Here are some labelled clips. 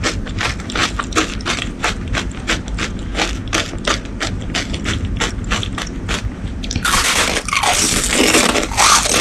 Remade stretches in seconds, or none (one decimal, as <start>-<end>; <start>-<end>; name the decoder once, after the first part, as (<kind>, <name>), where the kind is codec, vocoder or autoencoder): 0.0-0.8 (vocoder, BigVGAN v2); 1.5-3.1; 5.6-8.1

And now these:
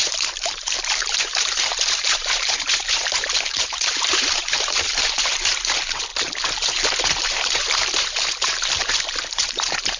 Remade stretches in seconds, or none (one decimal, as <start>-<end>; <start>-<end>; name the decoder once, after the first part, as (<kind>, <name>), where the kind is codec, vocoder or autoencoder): 0.0-6.1 (vocoder, BigVGAN v2); 6.7-10.0

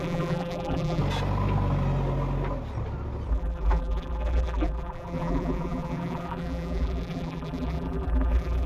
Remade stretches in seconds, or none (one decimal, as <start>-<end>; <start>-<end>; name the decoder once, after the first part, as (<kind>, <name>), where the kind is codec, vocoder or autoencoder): 0.0-1.0 (vocoder, BigVGAN v2); 3.3-8.7

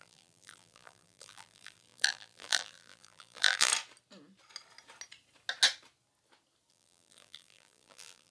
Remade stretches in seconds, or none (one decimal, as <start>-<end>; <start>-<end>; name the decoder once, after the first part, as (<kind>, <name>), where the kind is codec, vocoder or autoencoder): 0.0-3.7 (vocoder, BigVGAN v2); 6.7-8.3